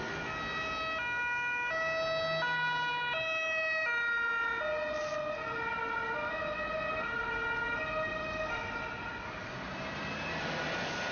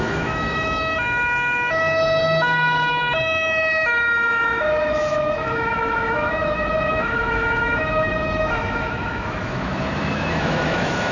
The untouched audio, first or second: first